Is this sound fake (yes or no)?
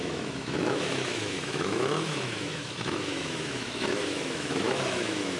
yes